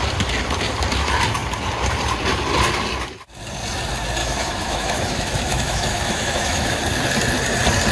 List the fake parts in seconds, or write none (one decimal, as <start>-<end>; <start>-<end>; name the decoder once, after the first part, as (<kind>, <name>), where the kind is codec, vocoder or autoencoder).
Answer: 4.2-6.8 (autoencoder, DAC-VAE)